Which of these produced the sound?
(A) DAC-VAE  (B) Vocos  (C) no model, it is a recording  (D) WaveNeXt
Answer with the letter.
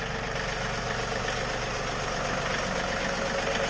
C